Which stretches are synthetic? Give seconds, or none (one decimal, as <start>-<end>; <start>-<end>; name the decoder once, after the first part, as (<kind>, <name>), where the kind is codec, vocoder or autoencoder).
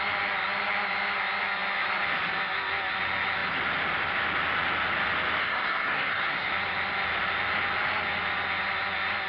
5.4-6.5 (codec, SNAC)